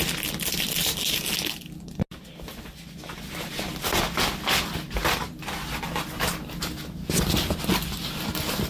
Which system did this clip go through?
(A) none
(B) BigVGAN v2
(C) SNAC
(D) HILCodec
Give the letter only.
A